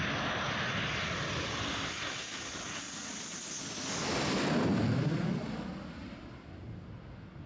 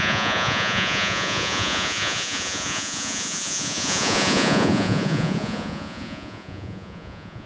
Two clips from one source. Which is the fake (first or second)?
second